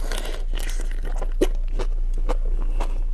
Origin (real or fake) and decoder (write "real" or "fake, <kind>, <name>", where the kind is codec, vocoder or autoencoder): real